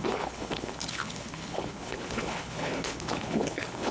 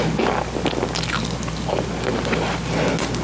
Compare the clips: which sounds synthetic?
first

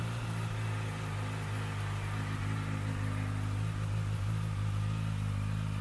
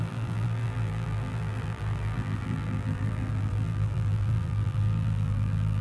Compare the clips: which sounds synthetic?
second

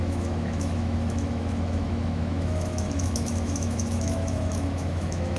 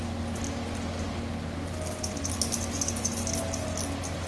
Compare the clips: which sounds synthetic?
first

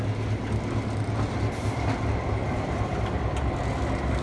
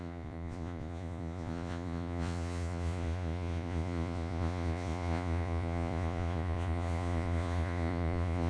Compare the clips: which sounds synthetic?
second